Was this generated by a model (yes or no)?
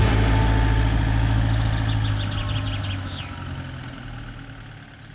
no